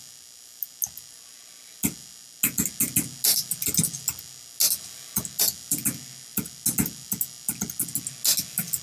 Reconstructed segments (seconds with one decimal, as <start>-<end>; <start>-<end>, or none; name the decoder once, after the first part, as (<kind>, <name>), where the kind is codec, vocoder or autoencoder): none